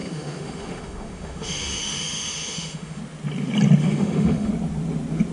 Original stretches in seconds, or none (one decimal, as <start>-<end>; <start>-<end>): 3.0-3.8; 4.5-5.3